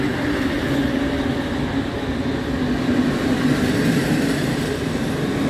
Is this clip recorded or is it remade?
recorded